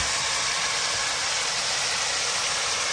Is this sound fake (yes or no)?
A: no